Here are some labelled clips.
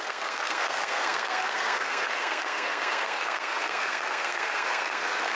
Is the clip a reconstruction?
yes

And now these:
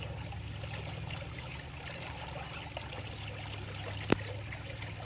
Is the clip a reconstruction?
no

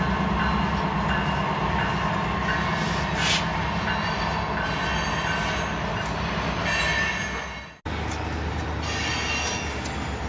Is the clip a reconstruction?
no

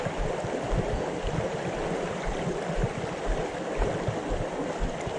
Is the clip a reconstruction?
no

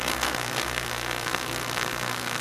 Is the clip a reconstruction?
yes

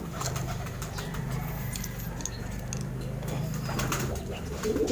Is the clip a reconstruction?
no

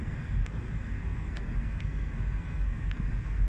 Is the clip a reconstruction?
yes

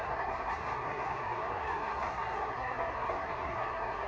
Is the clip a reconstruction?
yes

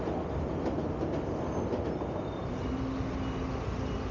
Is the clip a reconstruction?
no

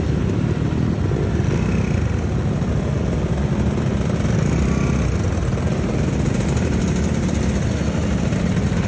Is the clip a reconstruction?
no